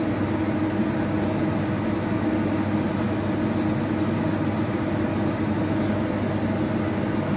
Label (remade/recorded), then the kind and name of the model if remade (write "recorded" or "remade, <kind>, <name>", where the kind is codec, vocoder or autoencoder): recorded